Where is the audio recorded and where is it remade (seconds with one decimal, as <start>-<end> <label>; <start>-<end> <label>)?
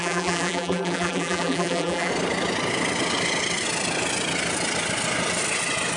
0.0-2.1 remade; 2.1-6.0 recorded